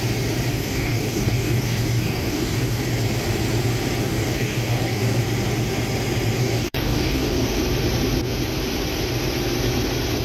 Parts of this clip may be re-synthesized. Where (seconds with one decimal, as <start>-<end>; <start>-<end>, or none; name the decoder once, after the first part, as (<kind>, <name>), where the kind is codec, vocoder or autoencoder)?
0.5-2.8 (codec, DAC); 4.0-5.2; 6.4-7.6